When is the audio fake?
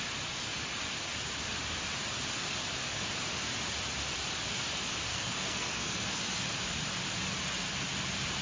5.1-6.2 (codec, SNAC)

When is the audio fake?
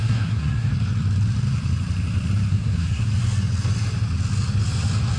0.0-0.7 (codec, SNAC); 2.5-3.1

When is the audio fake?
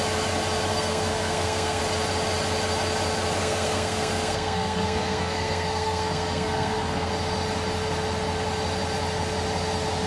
0.7-1.8 (codec, SNAC); 3.4-7.1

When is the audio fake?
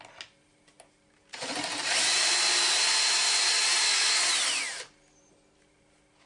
none